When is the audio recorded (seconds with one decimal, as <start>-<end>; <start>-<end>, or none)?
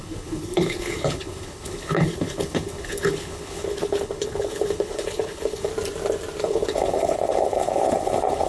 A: 5.7-6.4